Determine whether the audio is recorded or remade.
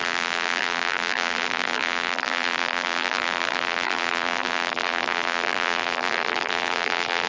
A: remade